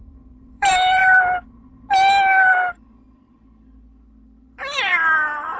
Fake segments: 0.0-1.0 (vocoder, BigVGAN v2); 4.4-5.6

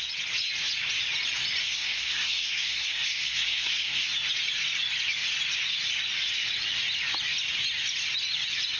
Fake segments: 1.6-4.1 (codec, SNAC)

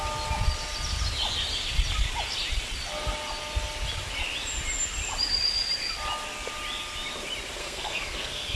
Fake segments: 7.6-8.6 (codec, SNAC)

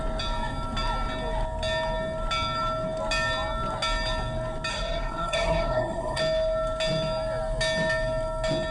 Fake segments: 4.7-6.2 (codec, SNAC)

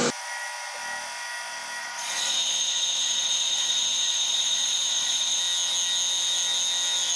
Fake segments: 1.8-5.4 (vocoder, Vocos)

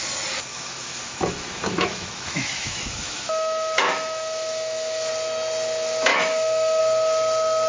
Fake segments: 0.5-5.1 (autoencoder, DAC-VAE); 6.1-6.8

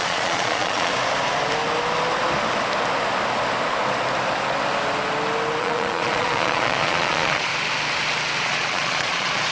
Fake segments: 0.0-0.9 (vocoder, Vocos); 5.6-7.5; 8.4-9.5

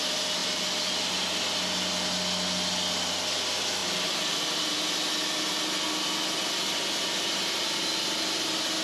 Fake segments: 3.8-4.8 (vocoder, BigVGAN v2)